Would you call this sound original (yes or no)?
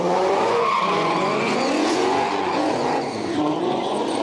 no